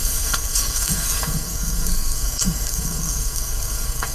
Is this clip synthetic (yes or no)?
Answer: yes